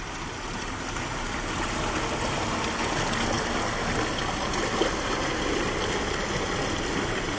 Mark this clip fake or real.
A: real